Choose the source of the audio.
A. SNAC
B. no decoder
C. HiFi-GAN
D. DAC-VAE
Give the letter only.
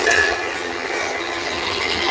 C